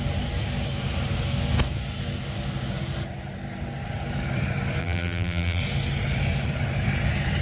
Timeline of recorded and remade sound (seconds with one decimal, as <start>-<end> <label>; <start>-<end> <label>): 0.0-4.8 recorded; 4.8-5.6 remade; 5.6-7.4 recorded